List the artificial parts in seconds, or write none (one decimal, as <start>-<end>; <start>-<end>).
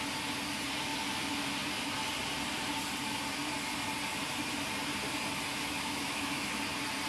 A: 5.5-6.6